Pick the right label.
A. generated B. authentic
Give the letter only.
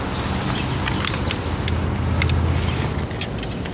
B